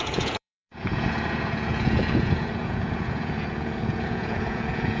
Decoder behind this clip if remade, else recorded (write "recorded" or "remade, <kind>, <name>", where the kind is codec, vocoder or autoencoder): remade, vocoder, Vocos